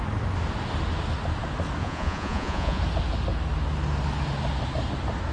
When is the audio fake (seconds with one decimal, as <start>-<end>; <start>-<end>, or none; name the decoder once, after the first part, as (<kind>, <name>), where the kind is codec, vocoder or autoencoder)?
1.8-2.8 (vocoder, Vocos)